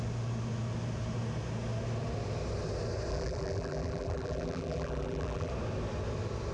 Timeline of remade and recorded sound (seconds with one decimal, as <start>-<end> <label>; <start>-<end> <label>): 0.0-3.1 recorded; 3.1-5.5 remade; 5.5-6.5 recorded